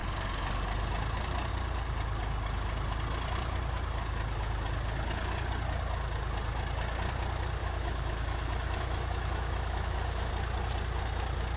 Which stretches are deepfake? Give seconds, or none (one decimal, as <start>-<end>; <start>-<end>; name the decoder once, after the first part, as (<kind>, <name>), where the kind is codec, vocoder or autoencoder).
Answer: 7.6-10.3 (autoencoder, DAC-VAE)